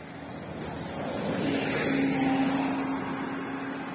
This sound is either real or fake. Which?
real